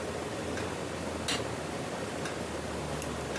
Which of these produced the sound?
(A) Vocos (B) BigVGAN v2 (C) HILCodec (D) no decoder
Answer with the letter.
D